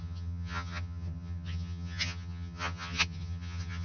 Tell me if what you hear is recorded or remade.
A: remade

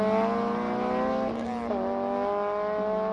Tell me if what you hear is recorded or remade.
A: recorded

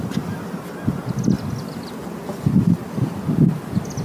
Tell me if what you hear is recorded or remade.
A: recorded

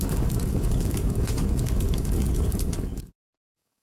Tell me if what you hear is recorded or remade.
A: remade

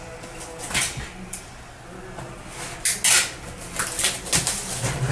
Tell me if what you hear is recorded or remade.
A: recorded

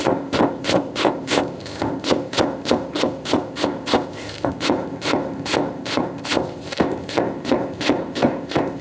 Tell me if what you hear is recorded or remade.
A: remade